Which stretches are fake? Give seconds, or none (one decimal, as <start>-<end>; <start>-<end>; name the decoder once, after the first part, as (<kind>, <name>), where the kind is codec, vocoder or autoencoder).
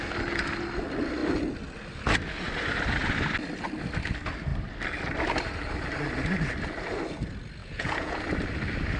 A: 7.6-8.2 (vocoder, Vocos)